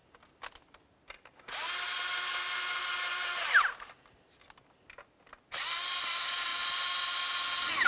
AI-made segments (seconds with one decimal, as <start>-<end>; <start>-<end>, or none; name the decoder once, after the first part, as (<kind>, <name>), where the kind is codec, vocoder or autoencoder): none